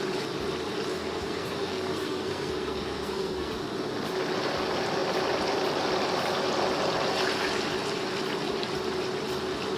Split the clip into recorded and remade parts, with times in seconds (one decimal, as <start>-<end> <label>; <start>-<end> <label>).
0.0-0.9 recorded; 0.9-3.5 remade; 3.5-9.8 recorded